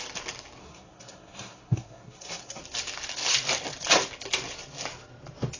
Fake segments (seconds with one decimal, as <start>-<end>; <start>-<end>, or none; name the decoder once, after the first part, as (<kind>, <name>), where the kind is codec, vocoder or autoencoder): 0.6-2.6 (codec, SNAC)